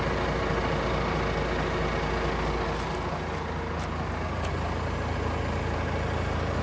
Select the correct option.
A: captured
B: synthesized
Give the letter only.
A